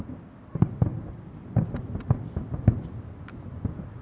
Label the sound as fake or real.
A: real